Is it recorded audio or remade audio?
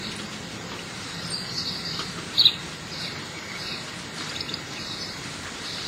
remade